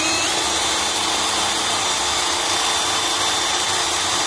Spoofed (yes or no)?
no